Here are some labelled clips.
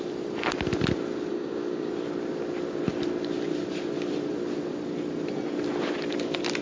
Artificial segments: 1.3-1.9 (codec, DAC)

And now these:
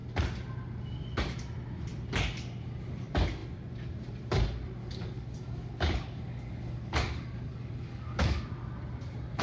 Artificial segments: 4.8-8.4 (codec, DAC)

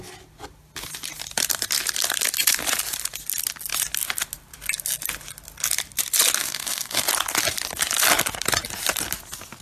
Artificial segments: 6.4-7.0 (codec, DAC)